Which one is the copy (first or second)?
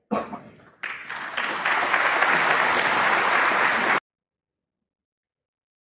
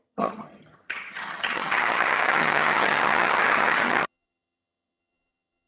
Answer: second